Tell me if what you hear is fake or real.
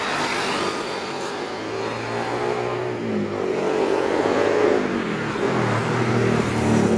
real